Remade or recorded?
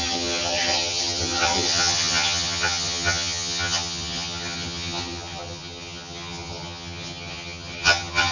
remade